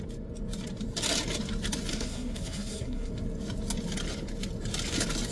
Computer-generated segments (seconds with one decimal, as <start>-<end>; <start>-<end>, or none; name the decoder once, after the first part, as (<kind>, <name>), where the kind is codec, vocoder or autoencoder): 1.9-3.1 (codec, SNAC)